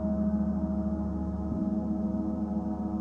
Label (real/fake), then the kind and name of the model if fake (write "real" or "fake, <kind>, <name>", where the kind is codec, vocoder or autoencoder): real